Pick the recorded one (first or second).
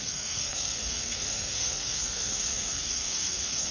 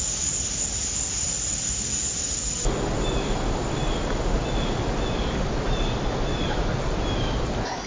second